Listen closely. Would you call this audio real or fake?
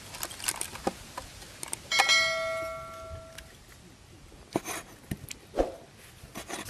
real